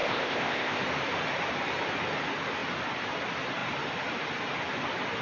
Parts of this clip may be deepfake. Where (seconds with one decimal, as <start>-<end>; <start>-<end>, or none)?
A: 0.0-0.8